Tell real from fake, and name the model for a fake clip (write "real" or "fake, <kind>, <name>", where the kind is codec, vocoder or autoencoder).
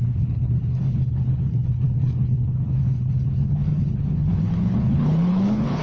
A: fake, codec, HILCodec